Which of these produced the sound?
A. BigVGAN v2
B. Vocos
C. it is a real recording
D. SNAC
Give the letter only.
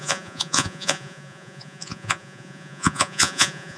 B